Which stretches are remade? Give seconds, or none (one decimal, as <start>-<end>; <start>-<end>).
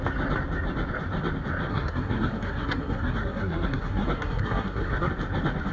1.7-5.1